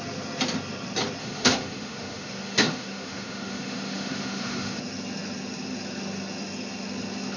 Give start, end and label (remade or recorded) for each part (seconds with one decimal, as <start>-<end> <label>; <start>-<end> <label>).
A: 0.0-1.2 recorded; 1.2-4.8 remade; 4.8-7.4 recorded